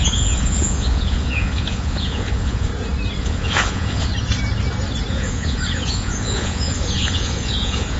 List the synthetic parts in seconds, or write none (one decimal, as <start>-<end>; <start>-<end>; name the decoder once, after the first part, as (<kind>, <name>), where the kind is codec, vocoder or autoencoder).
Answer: 0.0-2.7 (vocoder, Vocos); 3.2-4.1; 5.1-8.0